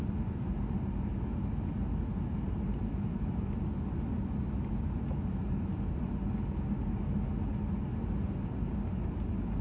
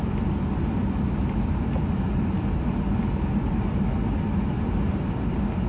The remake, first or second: second